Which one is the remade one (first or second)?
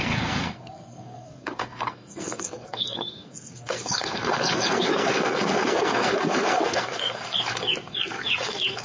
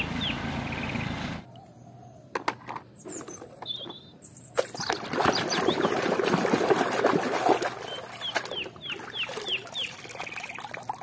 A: first